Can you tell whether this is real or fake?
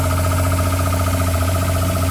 real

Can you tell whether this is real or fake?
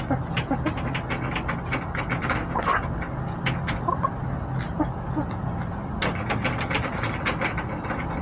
real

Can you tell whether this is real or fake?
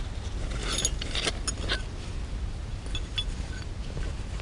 real